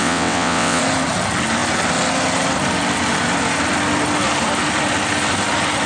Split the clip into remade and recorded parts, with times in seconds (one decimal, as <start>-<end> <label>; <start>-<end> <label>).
0.0-0.8 remade; 0.8-5.9 recorded